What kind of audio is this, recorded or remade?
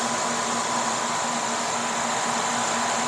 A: recorded